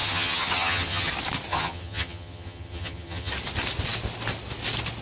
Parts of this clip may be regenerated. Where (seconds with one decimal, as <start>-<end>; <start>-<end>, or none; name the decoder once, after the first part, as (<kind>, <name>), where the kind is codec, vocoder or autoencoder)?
0.0-1.1 (vocoder, HiFi-GAN); 1.5-3.3